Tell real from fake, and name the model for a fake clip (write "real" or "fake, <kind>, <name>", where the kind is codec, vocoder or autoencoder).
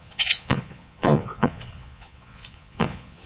fake, vocoder, Vocos